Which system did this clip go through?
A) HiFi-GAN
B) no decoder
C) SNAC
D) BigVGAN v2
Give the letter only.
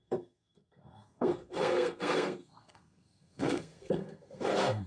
C